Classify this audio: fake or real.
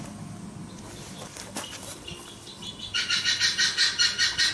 real